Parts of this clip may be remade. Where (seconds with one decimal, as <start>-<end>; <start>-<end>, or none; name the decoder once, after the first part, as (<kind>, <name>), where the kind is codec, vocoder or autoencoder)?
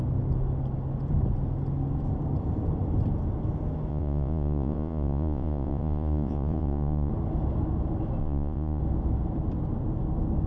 3.9-7.1 (vocoder, Vocos); 8.2-8.8